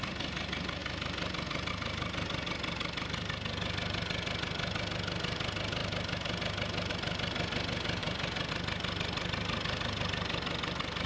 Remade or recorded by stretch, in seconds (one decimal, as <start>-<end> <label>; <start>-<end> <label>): 0.0-8.0 recorded; 8.0-8.5 remade; 8.5-11.1 recorded